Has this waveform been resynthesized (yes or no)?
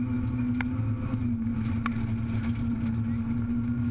no